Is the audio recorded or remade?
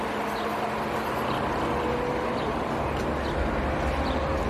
recorded